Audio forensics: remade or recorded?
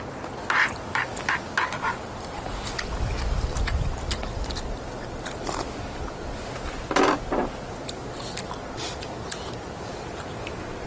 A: recorded